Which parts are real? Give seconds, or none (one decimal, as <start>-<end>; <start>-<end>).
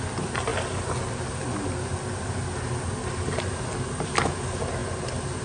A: 0.0-5.4